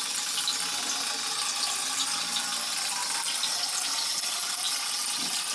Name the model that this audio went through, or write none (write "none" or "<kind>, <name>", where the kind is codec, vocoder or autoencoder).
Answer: none